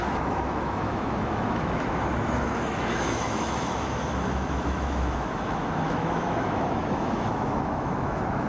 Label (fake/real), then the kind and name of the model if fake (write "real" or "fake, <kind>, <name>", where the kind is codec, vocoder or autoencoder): fake, autoencoder, DAC-VAE